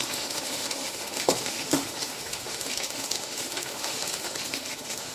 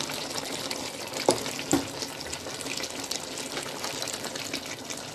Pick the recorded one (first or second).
second